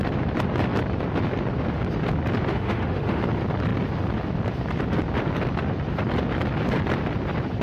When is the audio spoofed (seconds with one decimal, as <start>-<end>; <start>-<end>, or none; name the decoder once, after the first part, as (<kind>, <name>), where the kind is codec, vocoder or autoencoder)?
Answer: 2.5-3.2 (autoencoder, DAC-VAE)